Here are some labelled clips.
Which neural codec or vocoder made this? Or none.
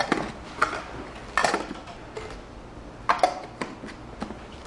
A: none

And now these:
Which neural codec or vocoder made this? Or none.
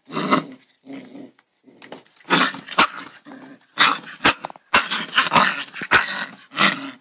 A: none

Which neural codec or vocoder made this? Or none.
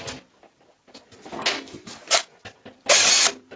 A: none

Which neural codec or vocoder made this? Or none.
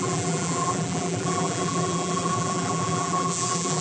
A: vocoder, BigVGAN v2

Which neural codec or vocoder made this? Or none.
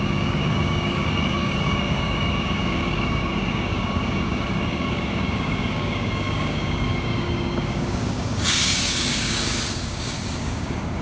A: codec, DAC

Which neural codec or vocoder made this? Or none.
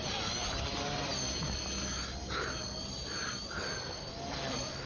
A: none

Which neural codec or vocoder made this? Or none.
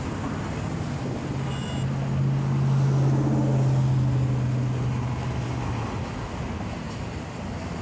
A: none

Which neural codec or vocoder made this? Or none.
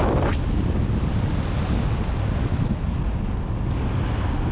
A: none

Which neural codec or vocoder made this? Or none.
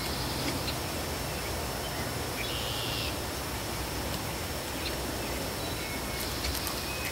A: none